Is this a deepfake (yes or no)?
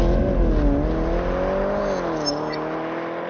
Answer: no